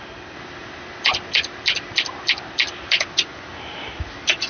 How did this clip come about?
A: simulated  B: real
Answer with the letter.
B